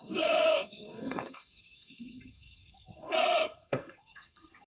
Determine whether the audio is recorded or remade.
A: remade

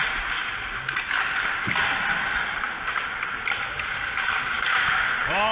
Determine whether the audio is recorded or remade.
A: recorded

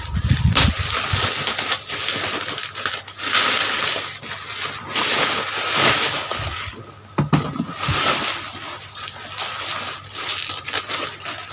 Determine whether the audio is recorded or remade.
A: recorded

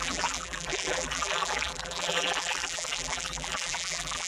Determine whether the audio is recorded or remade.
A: remade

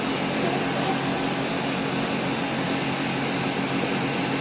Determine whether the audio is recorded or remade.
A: recorded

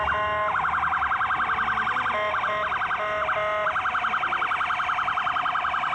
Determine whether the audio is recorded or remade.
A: recorded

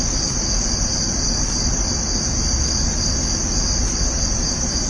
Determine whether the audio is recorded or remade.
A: recorded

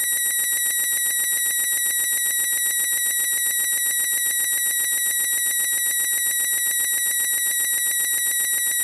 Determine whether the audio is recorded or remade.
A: recorded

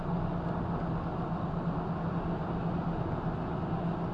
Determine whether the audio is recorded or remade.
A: recorded